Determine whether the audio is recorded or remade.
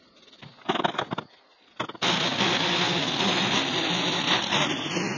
recorded